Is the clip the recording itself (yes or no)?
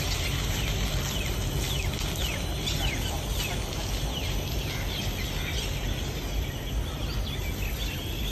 yes